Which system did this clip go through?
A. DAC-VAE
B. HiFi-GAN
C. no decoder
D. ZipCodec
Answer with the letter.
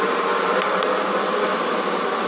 C